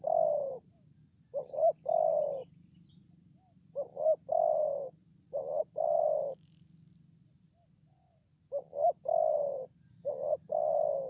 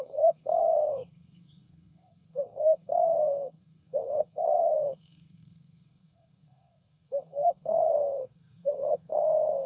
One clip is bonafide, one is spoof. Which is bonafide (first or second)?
first